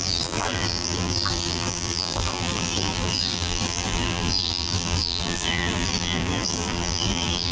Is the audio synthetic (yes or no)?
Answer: yes